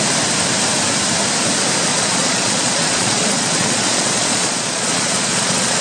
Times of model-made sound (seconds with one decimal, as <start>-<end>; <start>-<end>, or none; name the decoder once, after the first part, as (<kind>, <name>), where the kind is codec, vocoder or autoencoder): 1.9-5.8 (vocoder, Vocos)